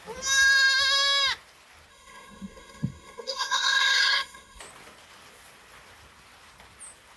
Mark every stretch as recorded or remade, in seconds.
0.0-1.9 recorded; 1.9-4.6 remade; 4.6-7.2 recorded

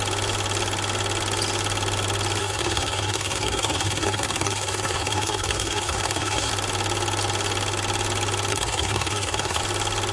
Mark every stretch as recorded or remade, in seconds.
0.0-2.4 recorded; 2.4-6.5 remade; 6.5-8.5 recorded; 8.5-9.6 remade; 9.6-10.1 recorded

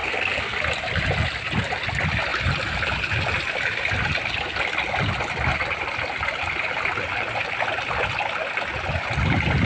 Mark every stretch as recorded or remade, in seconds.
0.0-0.6 remade; 0.6-9.7 recorded

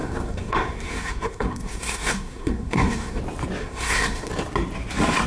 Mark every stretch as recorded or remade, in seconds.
0.0-3.2 remade; 3.2-3.6 recorded; 3.6-4.3 remade; 4.3-5.3 recorded

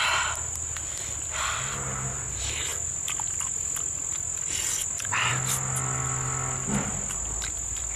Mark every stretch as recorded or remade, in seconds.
0.0-8.0 recorded